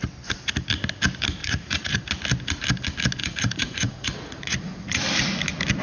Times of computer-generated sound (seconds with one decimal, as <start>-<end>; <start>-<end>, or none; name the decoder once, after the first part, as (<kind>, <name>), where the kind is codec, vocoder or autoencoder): 1.4-2.0 (vocoder, Vocos); 3.2-5.0